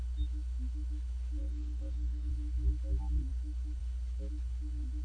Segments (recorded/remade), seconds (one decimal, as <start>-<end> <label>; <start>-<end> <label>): 0.0-1.4 recorded; 1.4-2.3 remade; 2.3-5.0 recorded